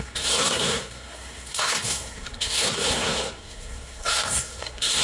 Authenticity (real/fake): fake